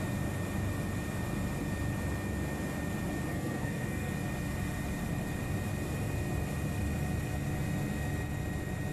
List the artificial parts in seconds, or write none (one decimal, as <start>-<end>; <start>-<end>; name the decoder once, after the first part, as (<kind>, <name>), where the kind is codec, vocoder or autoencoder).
3.3-4.1 (codec, SNAC)